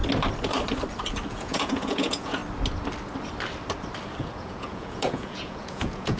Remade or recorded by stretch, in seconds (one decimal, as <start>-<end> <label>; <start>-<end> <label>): 0.0-1.3 recorded; 1.3-2.4 remade; 2.4-4.2 recorded; 4.2-6.2 remade